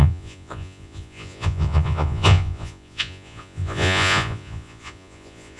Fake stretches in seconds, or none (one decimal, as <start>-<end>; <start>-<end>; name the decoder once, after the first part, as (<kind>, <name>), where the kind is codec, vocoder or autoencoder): 0.0-5.6 (vocoder, Vocos)